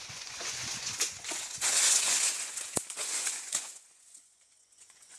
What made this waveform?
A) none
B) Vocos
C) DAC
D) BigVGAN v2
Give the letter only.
B